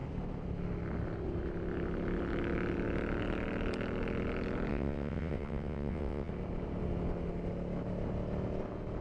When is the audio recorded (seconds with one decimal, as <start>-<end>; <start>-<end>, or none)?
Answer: 0.0-4.7; 6.3-9.0

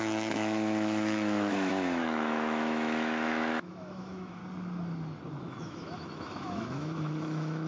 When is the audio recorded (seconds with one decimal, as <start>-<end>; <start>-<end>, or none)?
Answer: 4.4-5.4

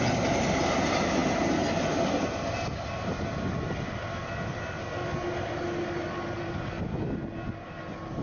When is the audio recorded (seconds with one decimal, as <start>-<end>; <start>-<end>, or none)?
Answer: 0.0-8.2

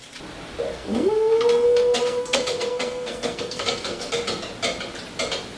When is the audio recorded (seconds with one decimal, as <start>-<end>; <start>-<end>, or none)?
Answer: 0.0-0.7; 4.1-5.6

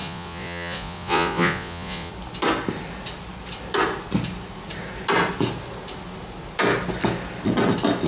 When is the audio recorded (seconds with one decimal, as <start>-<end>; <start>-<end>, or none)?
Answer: 2.1-8.1

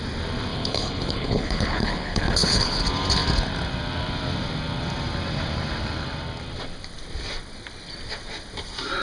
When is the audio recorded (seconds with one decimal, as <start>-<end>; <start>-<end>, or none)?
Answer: 0.0-0.5; 2.8-9.0

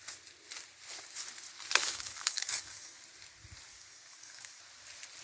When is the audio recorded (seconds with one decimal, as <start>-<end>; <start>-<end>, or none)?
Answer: 0.0-1.8; 3.0-3.7; 4.6-5.2